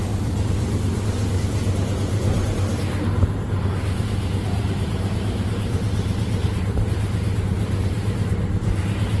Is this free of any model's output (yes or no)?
no